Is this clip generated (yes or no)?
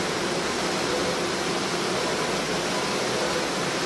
no